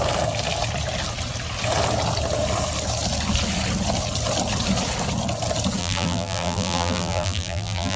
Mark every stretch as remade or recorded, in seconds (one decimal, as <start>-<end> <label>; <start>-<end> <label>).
0.0-5.8 recorded; 5.8-8.0 remade